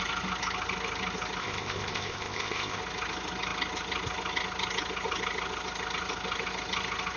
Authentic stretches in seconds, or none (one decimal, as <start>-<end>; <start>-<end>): 0.0-1.4; 2.8-7.2